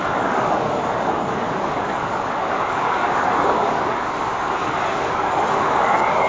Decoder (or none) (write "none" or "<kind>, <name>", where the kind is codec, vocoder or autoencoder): codec, DAC